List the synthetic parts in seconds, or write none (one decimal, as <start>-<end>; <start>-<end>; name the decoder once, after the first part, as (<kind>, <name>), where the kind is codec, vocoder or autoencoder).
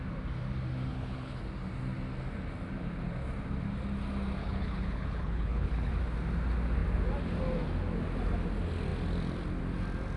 0.9-1.4 (codec, HILCodec); 4.4-5.9